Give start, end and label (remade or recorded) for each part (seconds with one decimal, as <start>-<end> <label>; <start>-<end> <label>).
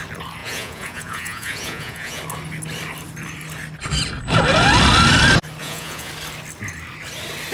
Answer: 0.0-0.4 recorded; 0.4-2.2 remade; 2.2-5.6 recorded; 5.6-6.1 remade; 6.1-7.5 recorded